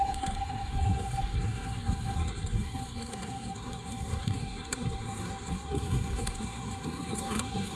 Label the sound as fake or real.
fake